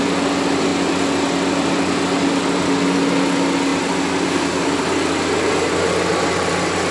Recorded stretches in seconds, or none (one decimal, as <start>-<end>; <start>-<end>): 0.0-6.9